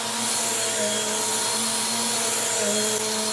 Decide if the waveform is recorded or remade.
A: recorded